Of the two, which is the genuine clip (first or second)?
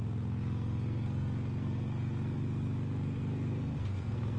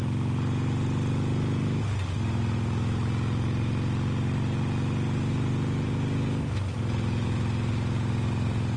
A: second